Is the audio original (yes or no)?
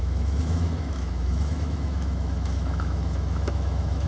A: no